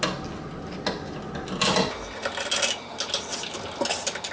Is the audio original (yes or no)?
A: yes